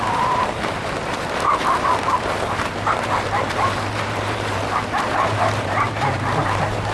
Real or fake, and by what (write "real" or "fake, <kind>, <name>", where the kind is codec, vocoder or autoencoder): fake, vocoder, BigVGAN v2